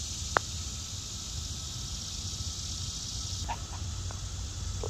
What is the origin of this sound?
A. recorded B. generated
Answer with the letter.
A